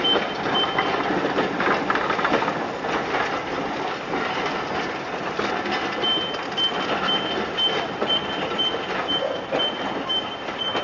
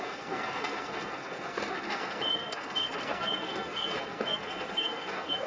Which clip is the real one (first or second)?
first